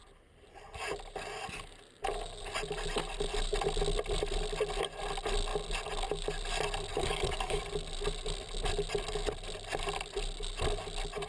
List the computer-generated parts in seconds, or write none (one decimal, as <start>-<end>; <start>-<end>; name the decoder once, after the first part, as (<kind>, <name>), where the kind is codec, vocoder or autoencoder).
6.9-7.6 (codec, DAC)